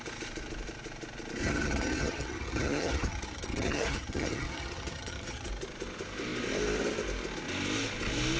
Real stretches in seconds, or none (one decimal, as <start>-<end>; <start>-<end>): 0.0-1.4; 5.5-8.4